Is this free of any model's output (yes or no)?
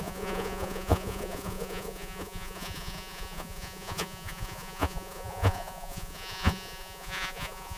no